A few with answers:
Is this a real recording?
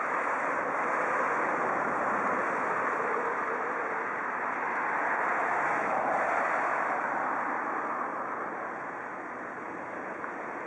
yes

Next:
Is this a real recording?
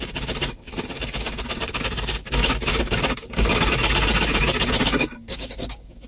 no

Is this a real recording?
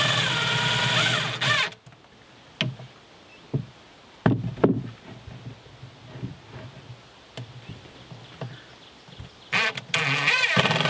yes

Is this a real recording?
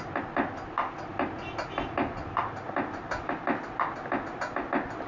yes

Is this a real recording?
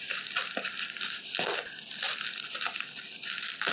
yes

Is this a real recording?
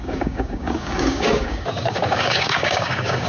no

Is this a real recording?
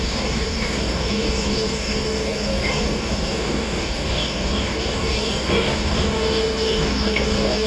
no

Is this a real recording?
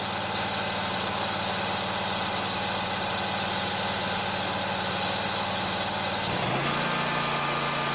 yes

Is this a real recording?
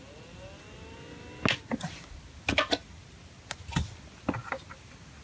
yes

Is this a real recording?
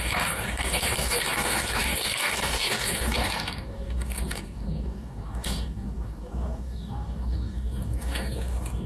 no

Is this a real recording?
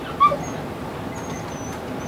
yes